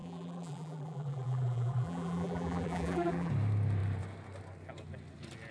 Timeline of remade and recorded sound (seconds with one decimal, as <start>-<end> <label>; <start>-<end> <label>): 0.0-3.3 remade; 3.3-5.5 recorded

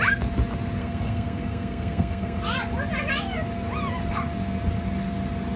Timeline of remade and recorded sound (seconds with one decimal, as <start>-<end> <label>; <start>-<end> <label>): 0.0-0.8 recorded; 0.8-2.4 remade; 2.4-5.6 recorded

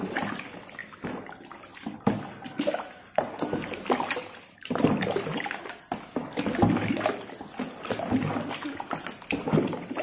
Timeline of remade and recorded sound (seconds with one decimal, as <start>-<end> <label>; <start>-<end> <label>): 0.0-10.0 recorded

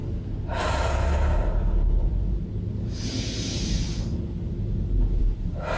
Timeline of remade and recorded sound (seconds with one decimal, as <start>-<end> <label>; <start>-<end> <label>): 0.0-5.8 recorded

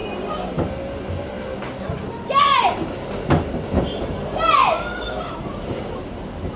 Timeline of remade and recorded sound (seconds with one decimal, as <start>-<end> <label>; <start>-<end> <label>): 0.0-4.6 recorded; 4.6-5.3 remade; 5.3-6.6 recorded

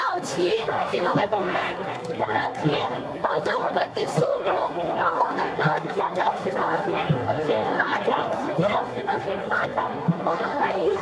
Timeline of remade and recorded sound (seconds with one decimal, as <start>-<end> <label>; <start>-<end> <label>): 0.0-11.0 remade

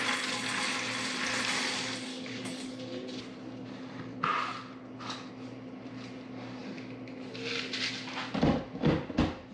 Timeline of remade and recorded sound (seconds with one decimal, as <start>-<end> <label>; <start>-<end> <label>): 0.0-2.1 recorded; 2.1-2.8 remade; 2.8-9.5 recorded

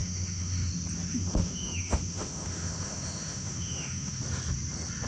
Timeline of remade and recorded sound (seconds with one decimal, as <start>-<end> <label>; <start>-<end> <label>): 0.0-0.7 remade; 0.7-1.1 recorded; 1.1-4.2 remade; 4.2-5.1 recorded